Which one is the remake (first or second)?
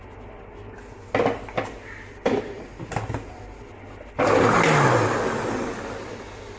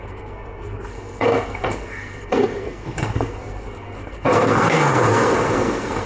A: second